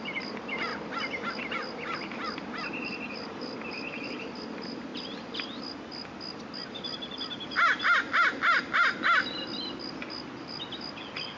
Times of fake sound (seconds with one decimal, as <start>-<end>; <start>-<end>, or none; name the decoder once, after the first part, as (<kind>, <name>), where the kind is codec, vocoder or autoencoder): none